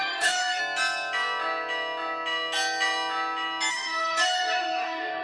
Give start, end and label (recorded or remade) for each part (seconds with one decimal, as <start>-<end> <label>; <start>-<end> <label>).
0.0-0.6 remade; 0.6-3.7 recorded; 3.7-5.2 remade